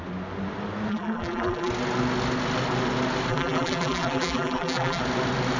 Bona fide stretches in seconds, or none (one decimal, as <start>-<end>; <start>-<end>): 0.0-0.9; 1.7-3.3; 5.0-5.6

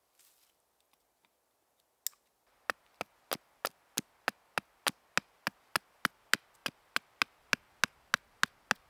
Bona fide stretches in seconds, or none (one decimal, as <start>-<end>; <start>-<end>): 0.0-8.9

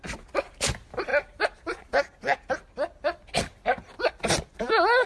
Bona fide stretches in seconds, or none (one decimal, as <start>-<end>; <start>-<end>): 0.0-5.1

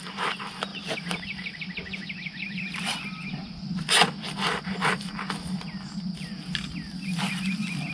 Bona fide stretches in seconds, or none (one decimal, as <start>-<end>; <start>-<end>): 0.0-0.7; 3.8-7.9

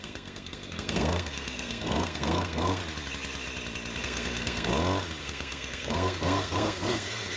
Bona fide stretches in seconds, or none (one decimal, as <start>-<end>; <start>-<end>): 2.8-4.0; 4.7-5.2

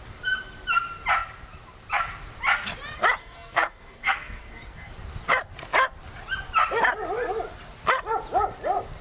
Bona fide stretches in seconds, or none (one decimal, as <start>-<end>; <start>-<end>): 0.0-3.2; 4.9-9.0

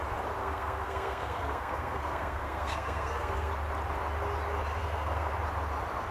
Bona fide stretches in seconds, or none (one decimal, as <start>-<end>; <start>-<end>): 0.0-0.4; 3.5-4.8; 5.3-6.1

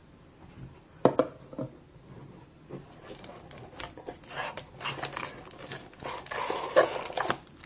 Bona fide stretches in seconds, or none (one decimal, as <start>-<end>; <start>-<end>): 0.0-7.7